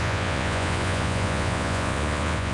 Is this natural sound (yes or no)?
no